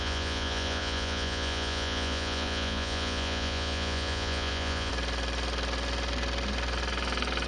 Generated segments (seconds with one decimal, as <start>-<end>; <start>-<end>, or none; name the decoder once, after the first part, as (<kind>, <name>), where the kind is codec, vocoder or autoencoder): 0.0-4.9 (vocoder, Vocos)